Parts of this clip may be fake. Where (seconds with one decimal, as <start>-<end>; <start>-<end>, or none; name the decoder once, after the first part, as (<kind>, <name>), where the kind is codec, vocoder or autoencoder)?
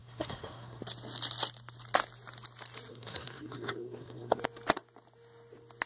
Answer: 0.0-0.8 (codec, SNAC); 2.9-4.4